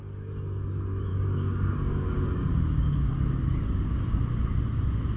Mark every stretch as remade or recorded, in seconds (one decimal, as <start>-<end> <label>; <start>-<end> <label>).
0.0-1.1 recorded; 1.1-4.2 remade; 4.2-5.2 recorded